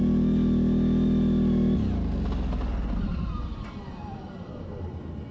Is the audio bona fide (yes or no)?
yes